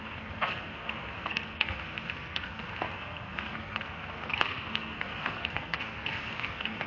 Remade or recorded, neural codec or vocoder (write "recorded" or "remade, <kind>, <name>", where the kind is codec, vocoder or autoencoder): remade, codec, SNAC